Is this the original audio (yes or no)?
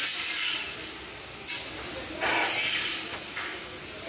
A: yes